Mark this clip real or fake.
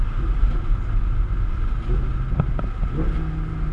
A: real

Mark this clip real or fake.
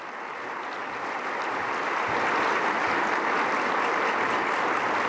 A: real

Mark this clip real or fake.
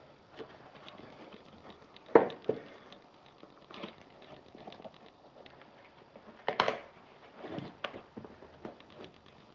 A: real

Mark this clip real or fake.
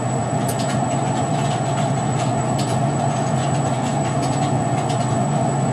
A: fake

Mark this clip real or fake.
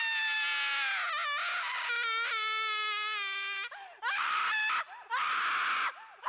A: real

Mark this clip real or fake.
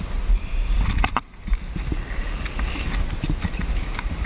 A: real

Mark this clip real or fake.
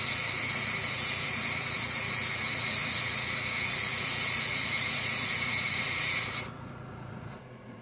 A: fake